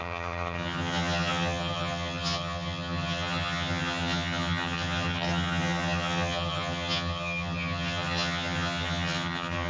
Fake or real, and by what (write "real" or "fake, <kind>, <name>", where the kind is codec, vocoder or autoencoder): fake, vocoder, HiFi-GAN